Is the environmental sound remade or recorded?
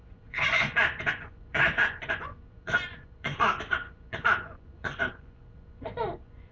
remade